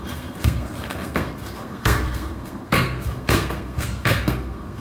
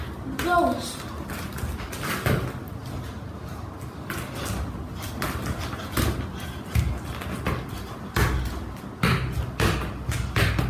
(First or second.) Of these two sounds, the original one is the second